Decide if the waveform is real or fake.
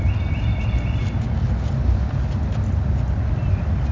real